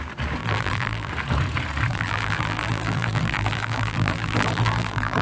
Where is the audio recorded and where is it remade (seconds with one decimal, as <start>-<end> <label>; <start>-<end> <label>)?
0.0-0.4 recorded; 0.4-1.1 remade; 1.1-1.9 recorded; 1.9-5.2 remade